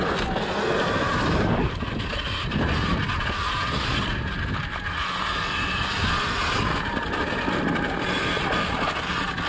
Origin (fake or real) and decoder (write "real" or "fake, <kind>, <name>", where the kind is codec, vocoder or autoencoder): real